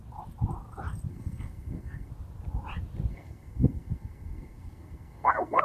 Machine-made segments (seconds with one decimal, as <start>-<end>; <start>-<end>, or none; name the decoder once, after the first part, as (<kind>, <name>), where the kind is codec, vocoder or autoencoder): 1.1-2.1 (codec, SNAC); 3.1-5.6